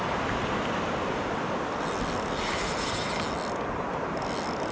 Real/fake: real